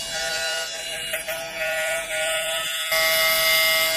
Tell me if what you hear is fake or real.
real